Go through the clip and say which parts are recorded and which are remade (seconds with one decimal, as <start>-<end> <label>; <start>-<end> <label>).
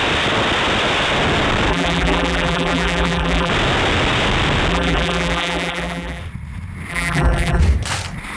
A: 0.0-1.7 recorded; 1.7-3.5 remade; 3.5-4.7 recorded; 4.7-6.2 remade; 6.2-6.9 recorded; 6.9-7.6 remade; 7.6-8.4 recorded